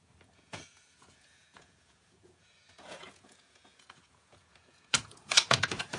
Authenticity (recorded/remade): remade